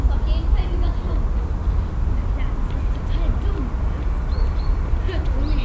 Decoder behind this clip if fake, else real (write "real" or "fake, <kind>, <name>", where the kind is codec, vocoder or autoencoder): real